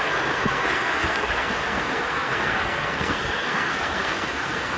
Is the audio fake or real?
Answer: fake